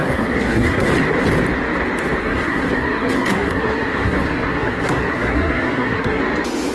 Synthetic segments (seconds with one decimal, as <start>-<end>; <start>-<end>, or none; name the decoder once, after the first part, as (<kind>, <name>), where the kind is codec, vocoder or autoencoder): 0.0-0.9 (codec, SNAC); 2.2-6.2